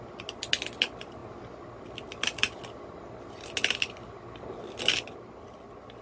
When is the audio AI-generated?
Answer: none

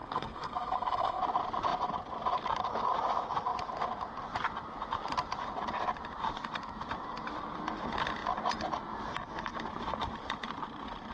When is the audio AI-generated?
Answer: 0.0-1.2 (codec, SNAC)